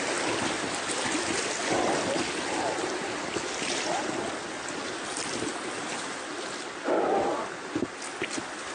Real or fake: real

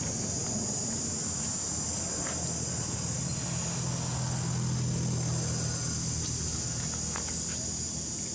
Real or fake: real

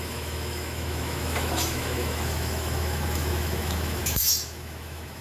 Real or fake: fake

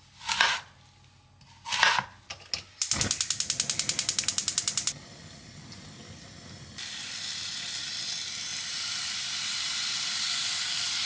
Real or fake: real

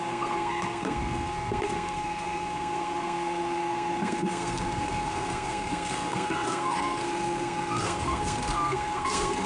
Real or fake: fake